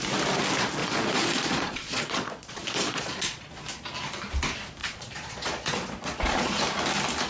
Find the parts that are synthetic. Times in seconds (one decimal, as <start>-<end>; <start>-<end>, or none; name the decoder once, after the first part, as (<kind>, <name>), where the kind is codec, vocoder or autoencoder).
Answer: 0.8-3.5 (vocoder, Vocos); 4.8-6.6